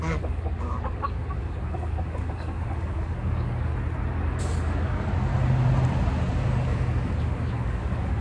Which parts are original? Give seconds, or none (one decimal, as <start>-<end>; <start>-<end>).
3.7-4.4; 5.3-6.3